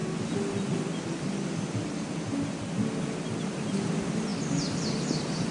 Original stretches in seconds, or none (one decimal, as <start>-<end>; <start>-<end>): 0.0-5.5